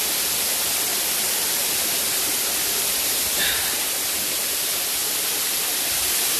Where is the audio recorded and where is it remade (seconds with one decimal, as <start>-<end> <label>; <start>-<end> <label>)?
0.0-0.9 recorded; 0.9-1.7 remade; 1.7-5.0 recorded; 5.0-5.5 remade; 5.5-6.4 recorded